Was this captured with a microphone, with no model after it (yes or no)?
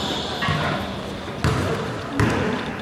yes